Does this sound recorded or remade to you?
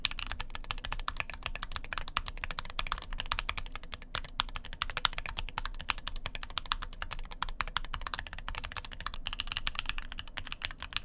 recorded